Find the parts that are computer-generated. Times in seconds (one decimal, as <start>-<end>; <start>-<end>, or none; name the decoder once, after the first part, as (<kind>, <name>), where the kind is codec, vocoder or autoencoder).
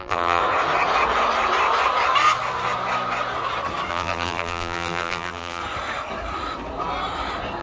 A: 0.0-0.4 (vocoder, BigVGAN v2); 3.9-5.6